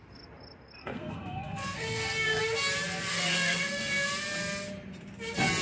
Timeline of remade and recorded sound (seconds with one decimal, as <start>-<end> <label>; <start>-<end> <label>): 0.0-0.8 recorded; 0.8-2.4 remade; 2.4-3.1 recorded; 3.1-4.1 remade; 4.1-5.6 recorded